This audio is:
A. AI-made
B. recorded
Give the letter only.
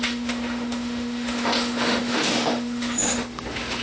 A